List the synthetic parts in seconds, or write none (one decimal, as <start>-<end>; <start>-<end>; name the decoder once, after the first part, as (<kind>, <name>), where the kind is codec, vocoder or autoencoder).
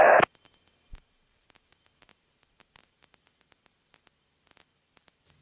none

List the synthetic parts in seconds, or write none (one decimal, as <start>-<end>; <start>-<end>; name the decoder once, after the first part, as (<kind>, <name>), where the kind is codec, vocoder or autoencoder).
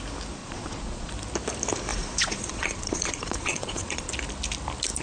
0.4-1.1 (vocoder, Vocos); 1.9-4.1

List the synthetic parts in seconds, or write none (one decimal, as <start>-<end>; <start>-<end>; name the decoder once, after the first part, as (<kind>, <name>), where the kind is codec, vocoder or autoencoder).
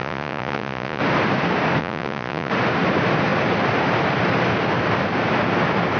0.0-1.0 (vocoder, Vocos); 1.8-2.5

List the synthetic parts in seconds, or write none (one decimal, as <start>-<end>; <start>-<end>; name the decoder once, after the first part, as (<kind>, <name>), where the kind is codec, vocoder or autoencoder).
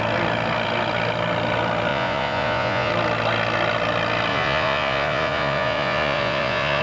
1.9-2.9 (vocoder, Vocos); 4.3-6.8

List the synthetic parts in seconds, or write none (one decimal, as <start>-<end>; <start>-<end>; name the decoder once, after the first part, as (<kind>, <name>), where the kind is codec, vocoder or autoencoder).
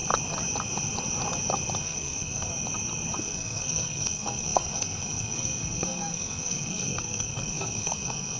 1.8-2.5 (codec, SNAC); 3.2-8.4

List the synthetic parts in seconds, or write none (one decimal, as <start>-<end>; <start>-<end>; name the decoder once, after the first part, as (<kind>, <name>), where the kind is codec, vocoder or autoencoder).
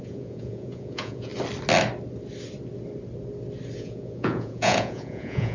0.0-1.3 (vocoder, Vocos); 3.8-5.5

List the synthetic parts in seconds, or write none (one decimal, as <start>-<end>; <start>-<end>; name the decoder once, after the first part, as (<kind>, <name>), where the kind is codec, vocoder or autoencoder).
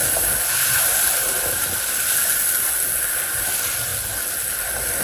none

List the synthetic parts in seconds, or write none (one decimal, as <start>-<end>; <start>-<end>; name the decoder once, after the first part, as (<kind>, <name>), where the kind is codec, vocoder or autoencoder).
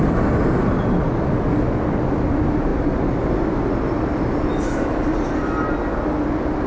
none